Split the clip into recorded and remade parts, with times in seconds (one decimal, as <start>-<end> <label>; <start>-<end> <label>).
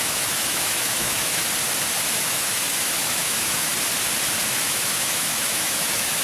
0.0-1.4 remade; 1.4-2.1 recorded; 2.1-3.7 remade; 3.7-4.5 recorded; 4.5-6.2 remade